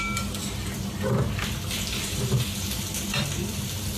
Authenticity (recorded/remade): recorded